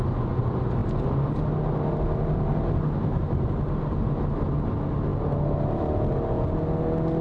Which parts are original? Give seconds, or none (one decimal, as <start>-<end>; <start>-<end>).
0.0-7.2